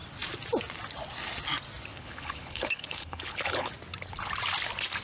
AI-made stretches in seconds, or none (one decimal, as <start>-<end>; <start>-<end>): 1.9-3.7